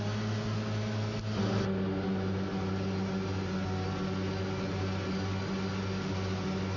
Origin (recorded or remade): recorded